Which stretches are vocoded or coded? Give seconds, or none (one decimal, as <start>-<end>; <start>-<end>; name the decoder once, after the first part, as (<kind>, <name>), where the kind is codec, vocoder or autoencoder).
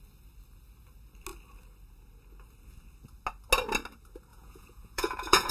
4.3-5.5 (vocoder, Vocos)